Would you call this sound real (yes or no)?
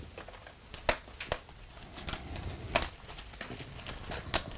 yes